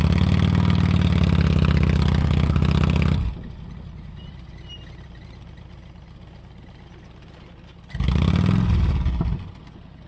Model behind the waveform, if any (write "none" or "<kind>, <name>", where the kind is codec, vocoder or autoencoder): none